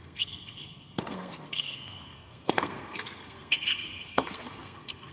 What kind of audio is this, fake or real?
fake